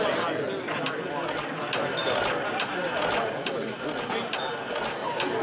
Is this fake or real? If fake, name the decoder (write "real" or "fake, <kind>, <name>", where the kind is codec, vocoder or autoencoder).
real